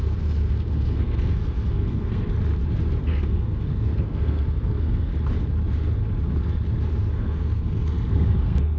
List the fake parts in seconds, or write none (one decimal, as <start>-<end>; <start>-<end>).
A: 0.0-2.3; 3.0-5.1; 7.1-8.8